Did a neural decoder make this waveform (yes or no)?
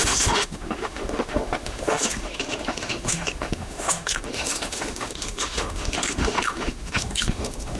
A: yes